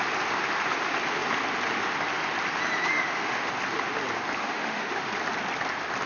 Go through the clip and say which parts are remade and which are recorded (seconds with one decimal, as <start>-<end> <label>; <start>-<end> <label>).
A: 0.0-2.9 recorded; 2.9-3.5 remade; 3.5-4.4 recorded; 4.4-5.1 remade; 5.1-6.1 recorded